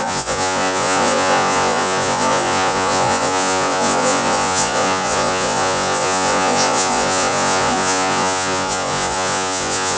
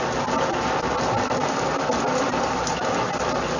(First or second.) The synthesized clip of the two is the first